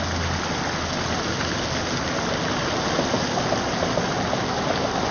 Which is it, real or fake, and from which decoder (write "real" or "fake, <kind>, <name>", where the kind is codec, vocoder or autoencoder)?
real